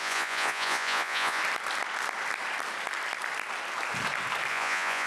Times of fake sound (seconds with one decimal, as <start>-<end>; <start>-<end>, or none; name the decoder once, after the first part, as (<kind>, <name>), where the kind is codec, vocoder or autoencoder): 0.0-1.4 (vocoder, Vocos); 4.5-5.1